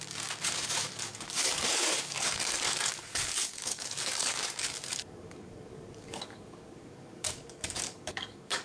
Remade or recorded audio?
remade